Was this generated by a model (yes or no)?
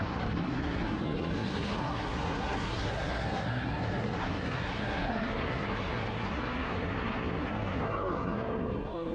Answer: yes